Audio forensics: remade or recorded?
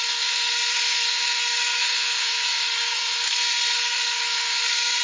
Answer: remade